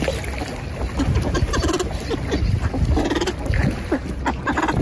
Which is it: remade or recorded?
recorded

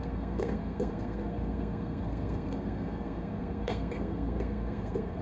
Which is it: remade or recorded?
remade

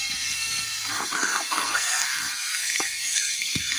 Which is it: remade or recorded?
remade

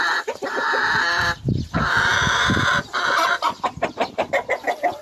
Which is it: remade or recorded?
recorded